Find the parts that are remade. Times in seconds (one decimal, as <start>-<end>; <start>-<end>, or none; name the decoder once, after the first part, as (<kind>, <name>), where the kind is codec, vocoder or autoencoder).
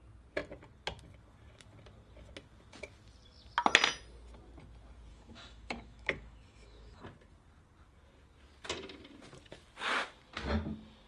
5.1-7.0 (autoencoder, DAC-VAE)